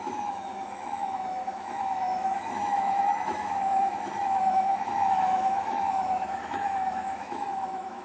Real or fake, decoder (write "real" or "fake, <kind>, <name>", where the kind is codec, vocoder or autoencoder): fake, autoencoder, DAC-VAE